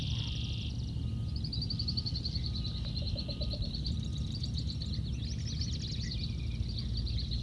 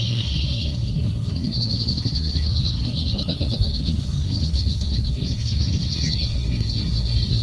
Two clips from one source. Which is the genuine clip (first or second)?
first